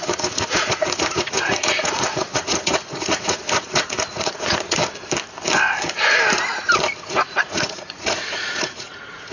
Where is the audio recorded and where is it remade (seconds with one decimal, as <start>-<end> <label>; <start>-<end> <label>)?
0.0-4.8 remade; 4.8-7.1 recorded; 7.1-9.3 remade